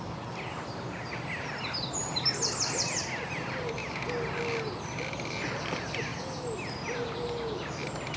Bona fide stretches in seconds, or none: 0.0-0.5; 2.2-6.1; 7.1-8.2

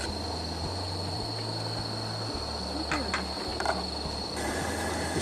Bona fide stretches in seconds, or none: 0.0-5.2

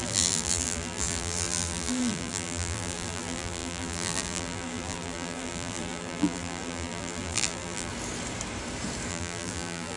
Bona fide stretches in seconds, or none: 7.9-9.1

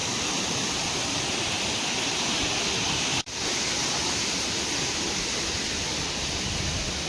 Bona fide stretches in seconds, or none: 0.9-3.1; 6.0-7.1

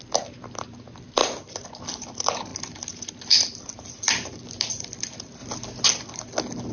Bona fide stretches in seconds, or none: 1.2-1.8; 2.5-3.1; 5.4-5.9

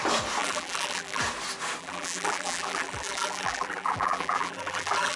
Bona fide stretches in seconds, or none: 0.0-0.4; 1.2-1.8

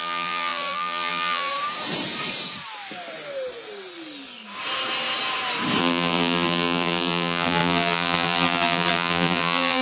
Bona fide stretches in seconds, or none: 1.5-5.8

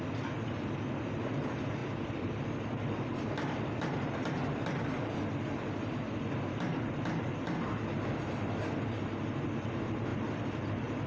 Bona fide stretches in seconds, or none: 0.0-1.8; 2.4-10.1